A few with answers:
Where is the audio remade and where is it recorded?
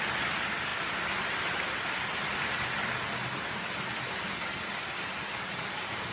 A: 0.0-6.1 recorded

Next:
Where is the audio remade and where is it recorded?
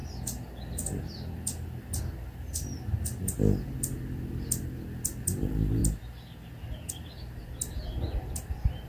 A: 0.0-8.9 recorded